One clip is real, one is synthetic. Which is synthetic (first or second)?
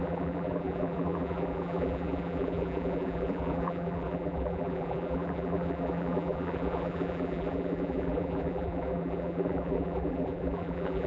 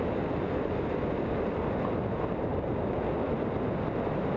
first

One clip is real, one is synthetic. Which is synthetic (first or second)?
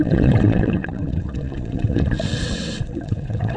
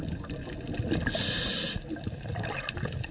first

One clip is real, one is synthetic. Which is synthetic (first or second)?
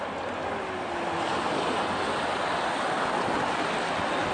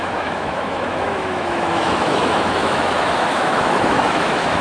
second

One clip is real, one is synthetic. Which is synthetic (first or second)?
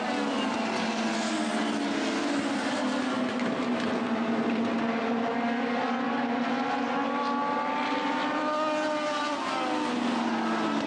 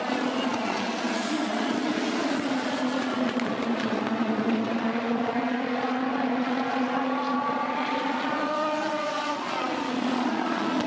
second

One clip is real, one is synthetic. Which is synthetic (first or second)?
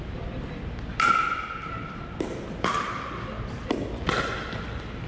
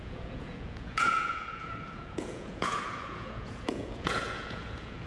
second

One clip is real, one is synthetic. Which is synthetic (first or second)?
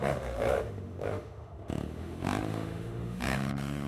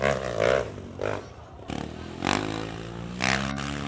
first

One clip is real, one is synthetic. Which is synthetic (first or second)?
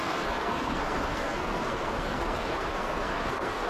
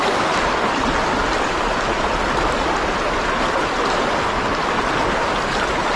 first